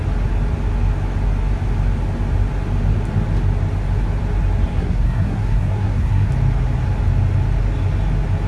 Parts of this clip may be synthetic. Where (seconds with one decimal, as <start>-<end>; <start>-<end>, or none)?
4.7-6.3